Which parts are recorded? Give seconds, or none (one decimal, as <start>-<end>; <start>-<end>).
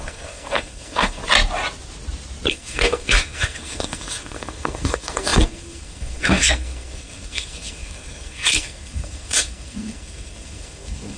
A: 1.2-2.5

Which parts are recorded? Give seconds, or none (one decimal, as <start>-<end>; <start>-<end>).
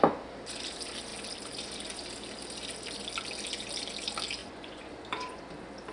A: 0.0-4.4; 5.4-5.9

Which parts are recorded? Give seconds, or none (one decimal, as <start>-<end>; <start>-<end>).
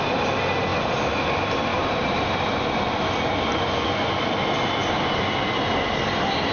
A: 0.0-6.5